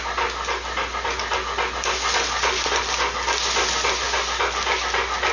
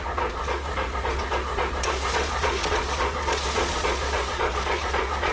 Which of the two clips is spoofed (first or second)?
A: second